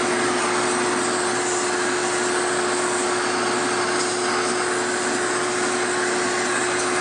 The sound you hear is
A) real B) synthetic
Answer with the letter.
A